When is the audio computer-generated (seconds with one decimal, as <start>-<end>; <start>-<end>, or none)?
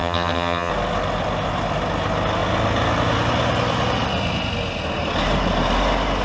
0.0-0.7